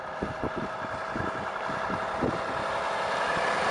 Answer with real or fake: real